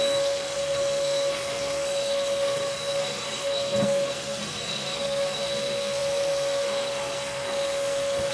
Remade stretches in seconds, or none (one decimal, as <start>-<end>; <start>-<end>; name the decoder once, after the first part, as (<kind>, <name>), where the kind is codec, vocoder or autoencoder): 0.0-8.3 (codec, SNAC)